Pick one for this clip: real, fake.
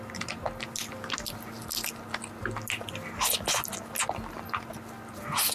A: real